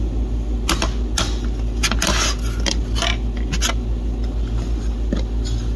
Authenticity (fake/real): real